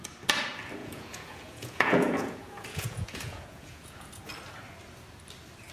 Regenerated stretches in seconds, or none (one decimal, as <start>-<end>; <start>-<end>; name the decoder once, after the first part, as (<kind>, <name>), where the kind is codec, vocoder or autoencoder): 0.8-4.2 (vocoder, Vocos)